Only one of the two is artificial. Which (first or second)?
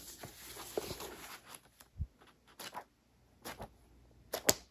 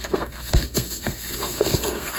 second